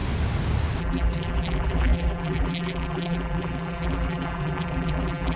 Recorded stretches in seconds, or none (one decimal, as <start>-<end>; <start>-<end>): 0.0-0.8

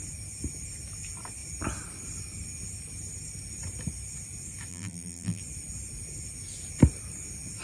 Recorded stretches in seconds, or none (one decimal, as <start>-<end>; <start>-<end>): 0.0-4.7; 5.4-7.6